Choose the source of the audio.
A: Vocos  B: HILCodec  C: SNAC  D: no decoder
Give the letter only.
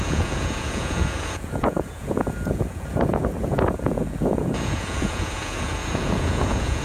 A